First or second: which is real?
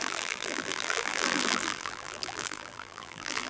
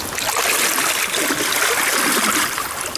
second